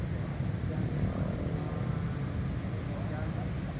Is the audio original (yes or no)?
yes